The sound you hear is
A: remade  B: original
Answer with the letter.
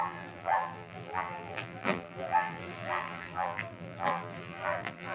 A